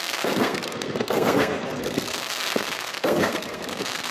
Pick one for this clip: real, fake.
fake